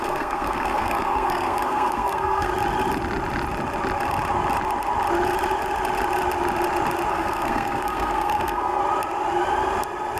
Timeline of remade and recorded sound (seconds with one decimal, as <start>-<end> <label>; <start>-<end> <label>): 0.0-2.5 remade; 2.5-7.1 recorded; 7.1-8.8 remade; 8.8-10.2 recorded